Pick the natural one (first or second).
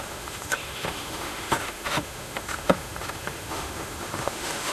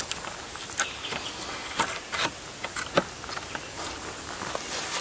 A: second